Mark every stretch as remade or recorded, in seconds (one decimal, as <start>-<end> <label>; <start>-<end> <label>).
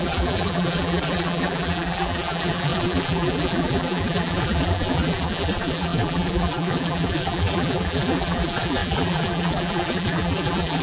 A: 0.0-10.8 remade